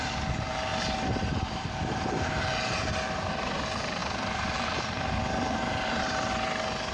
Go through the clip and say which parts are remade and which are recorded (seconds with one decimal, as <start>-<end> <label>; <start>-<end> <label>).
0.0-6.9 recorded